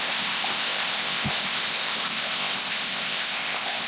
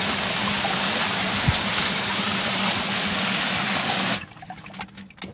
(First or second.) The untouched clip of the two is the second